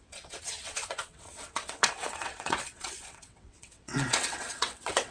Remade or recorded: remade